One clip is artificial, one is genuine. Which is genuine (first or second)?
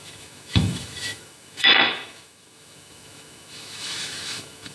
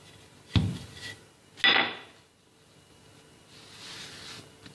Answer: second